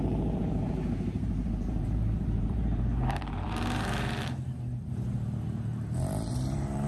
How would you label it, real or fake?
fake